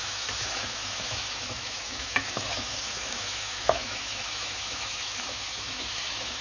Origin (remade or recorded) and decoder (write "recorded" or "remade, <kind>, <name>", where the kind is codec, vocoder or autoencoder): remade, autoencoder, DAC-VAE